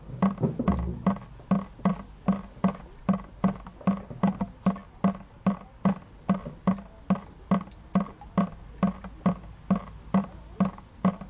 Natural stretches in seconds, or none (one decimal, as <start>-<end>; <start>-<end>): 0.0-11.3